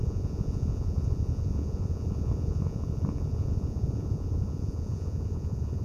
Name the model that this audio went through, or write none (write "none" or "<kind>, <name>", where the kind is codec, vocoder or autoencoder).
vocoder, Vocos